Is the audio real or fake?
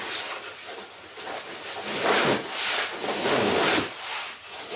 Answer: real